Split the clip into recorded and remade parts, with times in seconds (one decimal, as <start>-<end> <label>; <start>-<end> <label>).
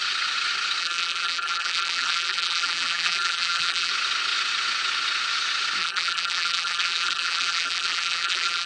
0.0-0.8 recorded; 0.8-3.9 remade; 3.9-5.8 recorded; 5.8-8.7 remade